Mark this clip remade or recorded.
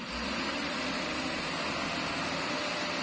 recorded